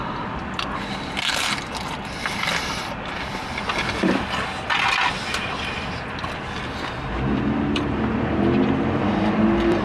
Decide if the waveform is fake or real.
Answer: real